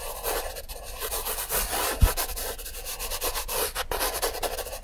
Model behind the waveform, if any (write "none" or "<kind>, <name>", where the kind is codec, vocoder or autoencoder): none